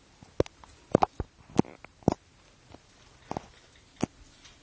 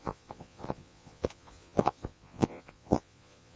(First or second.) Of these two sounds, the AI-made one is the second